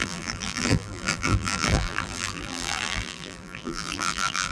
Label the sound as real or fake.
fake